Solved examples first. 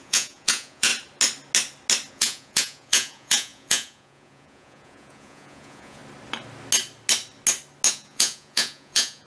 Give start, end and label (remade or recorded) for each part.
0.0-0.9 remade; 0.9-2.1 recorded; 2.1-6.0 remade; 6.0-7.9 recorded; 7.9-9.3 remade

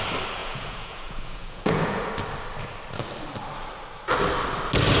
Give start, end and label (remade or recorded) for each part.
0.0-0.4 recorded; 0.4-2.1 remade; 2.1-5.0 recorded

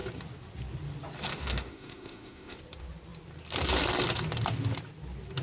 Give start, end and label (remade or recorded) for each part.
0.0-1.3 recorded; 1.3-2.6 remade; 2.6-5.4 recorded

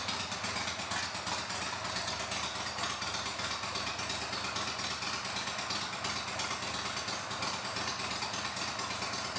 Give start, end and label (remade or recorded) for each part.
0.0-3.3 recorded; 3.3-4.0 remade; 4.0-9.4 recorded

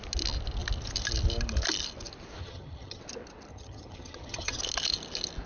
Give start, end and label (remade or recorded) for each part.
0.0-2.4 recorded; 2.4-3.0 remade; 3.0-3.5 recorded; 3.5-4.6 remade; 4.6-5.5 recorded

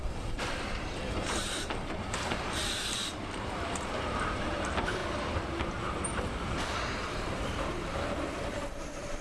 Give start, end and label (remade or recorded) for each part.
0.0-5.0 remade; 5.0-5.8 recorded; 5.8-9.2 remade